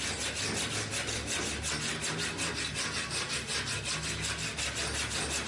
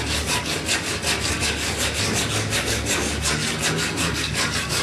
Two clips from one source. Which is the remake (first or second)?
second